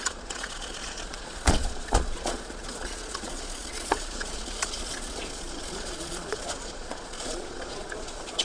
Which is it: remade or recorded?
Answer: remade